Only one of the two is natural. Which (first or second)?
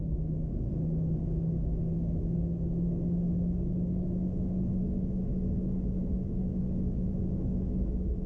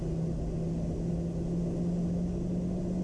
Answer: second